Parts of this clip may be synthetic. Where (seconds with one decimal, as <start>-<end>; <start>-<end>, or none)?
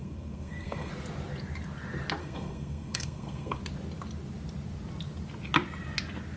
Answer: 0.0-0.9; 2.2-3.6